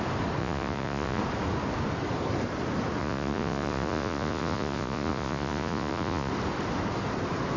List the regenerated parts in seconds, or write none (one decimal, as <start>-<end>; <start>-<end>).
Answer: 0.4-1.2; 3.0-6.3